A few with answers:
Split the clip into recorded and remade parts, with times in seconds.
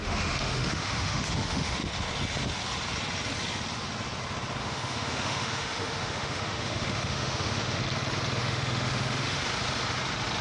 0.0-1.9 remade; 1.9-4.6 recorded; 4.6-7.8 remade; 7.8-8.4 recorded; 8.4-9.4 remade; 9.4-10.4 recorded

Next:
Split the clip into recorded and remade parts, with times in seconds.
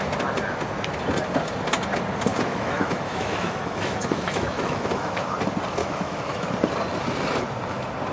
0.0-2.3 recorded; 2.3-5.2 remade; 5.2-5.8 recorded; 5.8-6.5 remade; 6.5-8.1 recorded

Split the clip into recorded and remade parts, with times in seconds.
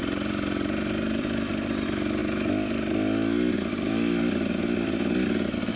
0.0-5.8 recorded